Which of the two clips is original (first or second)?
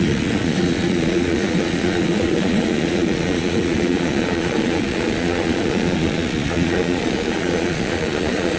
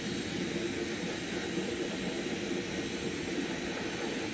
second